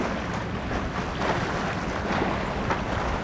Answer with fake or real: real